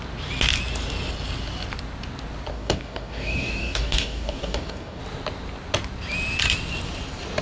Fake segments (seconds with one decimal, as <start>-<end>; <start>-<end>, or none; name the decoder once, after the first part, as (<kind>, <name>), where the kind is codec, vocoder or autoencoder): 2.5-5.0 (codec, DAC)